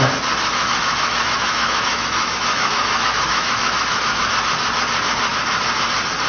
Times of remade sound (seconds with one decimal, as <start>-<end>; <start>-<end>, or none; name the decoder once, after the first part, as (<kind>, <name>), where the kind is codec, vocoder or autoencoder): 0.5-4.3 (autoencoder, DAC-VAE)